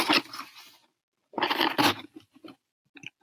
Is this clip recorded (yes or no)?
yes